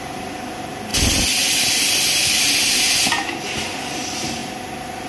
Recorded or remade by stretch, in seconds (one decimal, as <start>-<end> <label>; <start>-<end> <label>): 0.0-5.1 recorded